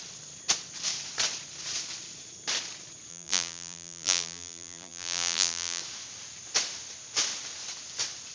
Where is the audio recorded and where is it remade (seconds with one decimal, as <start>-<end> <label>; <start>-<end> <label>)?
0.0-3.1 recorded; 3.1-5.8 remade; 5.8-8.3 recorded